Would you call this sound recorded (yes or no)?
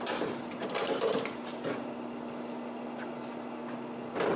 yes